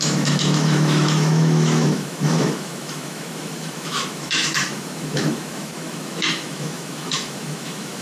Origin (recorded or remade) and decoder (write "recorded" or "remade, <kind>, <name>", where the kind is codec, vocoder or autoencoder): remade, autoencoder, DAC-VAE